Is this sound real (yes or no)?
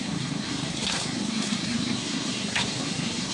no